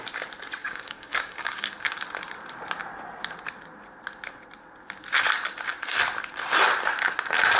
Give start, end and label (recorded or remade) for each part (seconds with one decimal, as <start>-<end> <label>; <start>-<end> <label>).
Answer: 0.0-0.6 recorded; 0.6-1.7 remade; 1.7-7.6 recorded